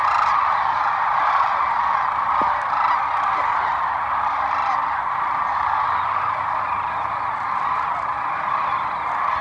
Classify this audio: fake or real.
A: real